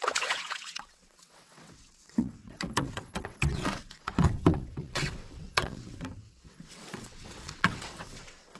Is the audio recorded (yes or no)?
no